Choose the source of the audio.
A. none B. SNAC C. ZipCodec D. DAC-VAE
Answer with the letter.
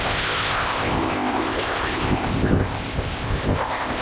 C